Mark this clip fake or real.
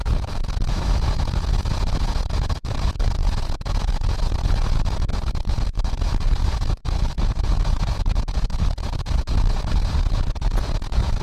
fake